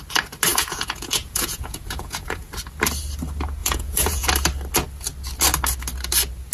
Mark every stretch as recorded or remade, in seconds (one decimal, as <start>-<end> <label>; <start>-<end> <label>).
0.0-0.5 recorded; 0.5-2.5 remade; 2.5-3.6 recorded; 3.6-4.3 remade; 4.3-6.5 recorded